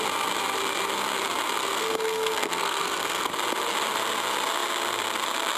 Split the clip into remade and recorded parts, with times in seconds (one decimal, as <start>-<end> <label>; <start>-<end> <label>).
0.0-1.6 recorded; 1.6-3.3 remade; 3.3-5.6 recorded